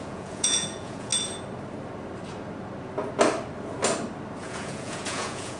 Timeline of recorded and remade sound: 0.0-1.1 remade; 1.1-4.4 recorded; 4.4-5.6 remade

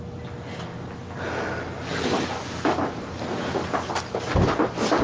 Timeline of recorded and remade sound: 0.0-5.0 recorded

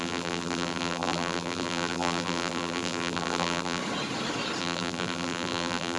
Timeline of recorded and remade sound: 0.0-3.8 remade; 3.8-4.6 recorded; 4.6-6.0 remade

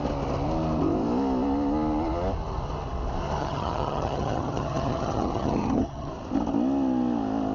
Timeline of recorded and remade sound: 0.0-3.4 recorded; 3.4-6.1 remade; 6.1-7.5 recorded

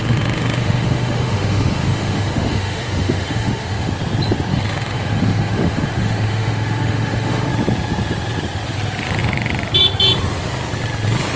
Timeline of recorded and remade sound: 0.0-3.9 remade; 3.9-4.5 recorded; 4.5-7.5 remade; 7.5-11.4 recorded

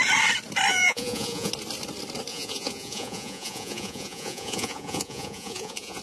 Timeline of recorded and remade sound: 0.0-0.7 recorded; 0.7-1.5 remade; 1.5-2.3 recorded; 2.3-6.0 remade

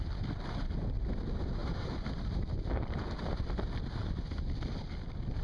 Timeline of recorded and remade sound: 0.0-1.6 recorded; 1.6-3.3 remade; 3.3-5.4 recorded